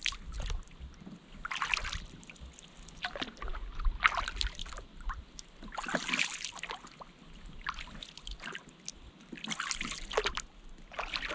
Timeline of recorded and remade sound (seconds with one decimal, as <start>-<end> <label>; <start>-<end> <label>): 0.0-11.3 recorded